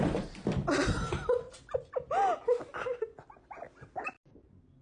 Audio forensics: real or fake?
real